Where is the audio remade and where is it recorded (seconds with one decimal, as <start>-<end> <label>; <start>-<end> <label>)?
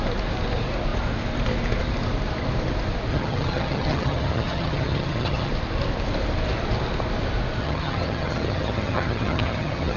0.0-3.1 recorded; 3.1-5.5 remade; 5.5-7.6 recorded; 7.6-10.0 remade